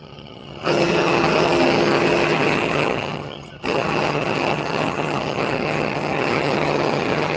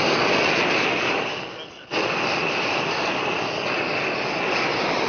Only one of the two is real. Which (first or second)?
second